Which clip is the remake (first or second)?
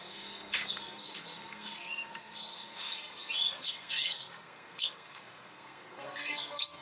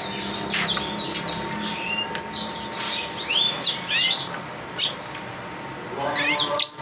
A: first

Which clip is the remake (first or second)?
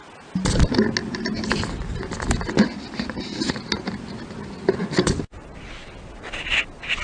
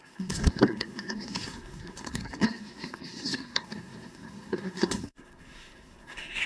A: second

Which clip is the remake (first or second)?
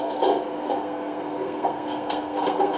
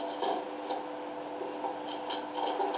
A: first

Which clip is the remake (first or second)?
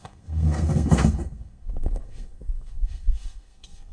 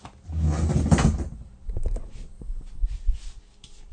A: first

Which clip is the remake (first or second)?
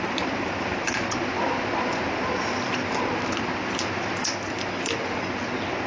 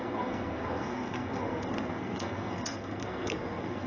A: second